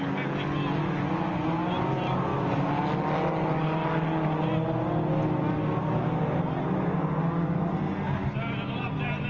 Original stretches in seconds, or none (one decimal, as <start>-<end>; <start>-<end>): 0.0-9.3